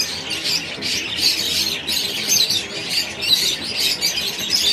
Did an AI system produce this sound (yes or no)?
no